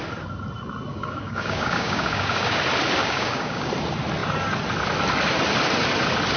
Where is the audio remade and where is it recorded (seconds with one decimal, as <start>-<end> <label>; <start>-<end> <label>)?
0.0-0.9 recorded; 0.9-2.6 remade; 2.6-3.0 recorded; 3.0-3.7 remade; 3.7-6.4 recorded